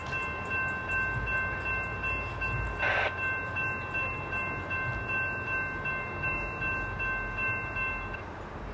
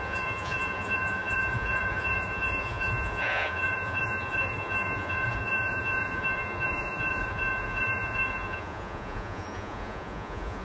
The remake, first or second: second